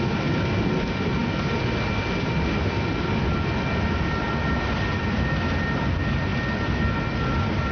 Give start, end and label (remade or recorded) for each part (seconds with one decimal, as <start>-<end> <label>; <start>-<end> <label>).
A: 0.0-7.7 recorded